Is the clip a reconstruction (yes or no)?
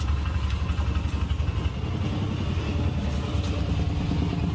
no